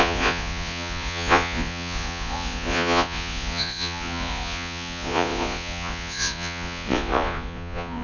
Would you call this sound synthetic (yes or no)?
yes